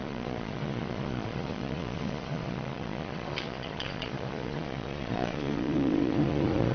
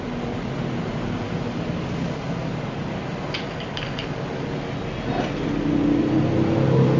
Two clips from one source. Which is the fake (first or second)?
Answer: first